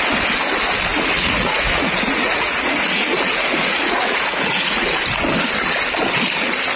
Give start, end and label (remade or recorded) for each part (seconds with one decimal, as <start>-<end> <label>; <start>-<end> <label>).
0.0-0.9 recorded; 0.9-5.0 remade; 5.0-6.8 recorded